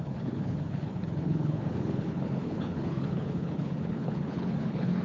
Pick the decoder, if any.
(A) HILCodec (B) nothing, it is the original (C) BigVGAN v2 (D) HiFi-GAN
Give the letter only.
A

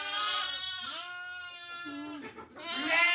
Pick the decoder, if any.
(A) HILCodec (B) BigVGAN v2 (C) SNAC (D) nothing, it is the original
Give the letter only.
D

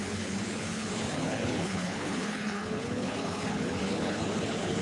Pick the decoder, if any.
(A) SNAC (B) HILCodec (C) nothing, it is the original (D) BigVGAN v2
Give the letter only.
B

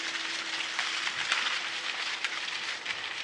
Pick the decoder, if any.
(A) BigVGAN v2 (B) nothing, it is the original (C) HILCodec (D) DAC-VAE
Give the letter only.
B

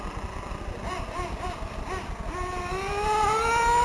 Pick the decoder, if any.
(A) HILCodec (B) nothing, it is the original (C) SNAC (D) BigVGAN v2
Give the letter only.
B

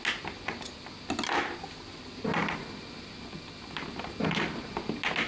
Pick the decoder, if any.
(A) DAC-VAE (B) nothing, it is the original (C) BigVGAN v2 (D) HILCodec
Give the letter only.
B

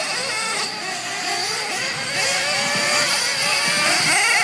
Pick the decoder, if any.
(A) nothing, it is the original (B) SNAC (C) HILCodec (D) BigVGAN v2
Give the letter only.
A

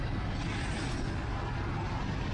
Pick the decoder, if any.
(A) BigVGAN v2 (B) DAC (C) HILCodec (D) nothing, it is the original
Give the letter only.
D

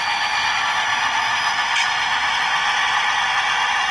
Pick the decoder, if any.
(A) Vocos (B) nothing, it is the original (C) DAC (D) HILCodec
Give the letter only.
B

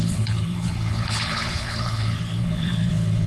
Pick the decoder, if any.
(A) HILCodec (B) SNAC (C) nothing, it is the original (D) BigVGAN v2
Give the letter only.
A